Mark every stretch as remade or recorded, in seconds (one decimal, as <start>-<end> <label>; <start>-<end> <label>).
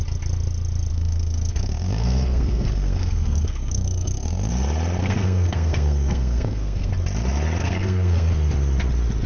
0.0-0.9 recorded; 0.9-4.5 remade; 4.5-5.0 recorded; 5.0-6.9 remade; 6.9-7.6 recorded; 7.6-8.3 remade; 8.3-9.3 recorded